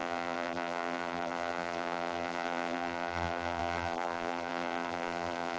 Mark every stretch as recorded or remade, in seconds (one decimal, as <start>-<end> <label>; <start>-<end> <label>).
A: 0.0-5.6 remade